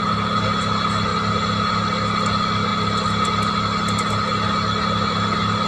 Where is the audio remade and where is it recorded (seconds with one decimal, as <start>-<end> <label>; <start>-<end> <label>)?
0.0-5.7 recorded